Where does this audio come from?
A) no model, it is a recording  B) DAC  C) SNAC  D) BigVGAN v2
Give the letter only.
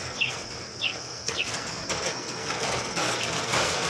C